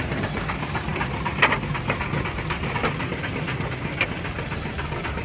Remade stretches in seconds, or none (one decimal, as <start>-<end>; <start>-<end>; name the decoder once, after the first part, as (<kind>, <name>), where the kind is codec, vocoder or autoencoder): none